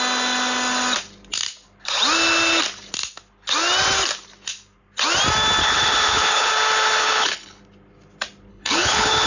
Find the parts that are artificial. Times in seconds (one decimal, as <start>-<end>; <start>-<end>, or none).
5.6-6.5; 7.0-7.6; 8.5-9.3